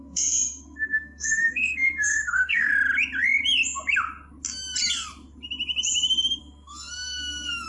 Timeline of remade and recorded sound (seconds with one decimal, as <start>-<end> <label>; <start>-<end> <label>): 0.0-2.7 remade; 2.7-6.4 recorded; 6.4-7.7 remade